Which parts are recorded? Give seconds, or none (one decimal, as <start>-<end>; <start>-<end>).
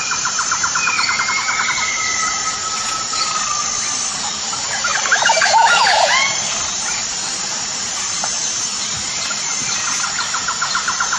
2.6-4.1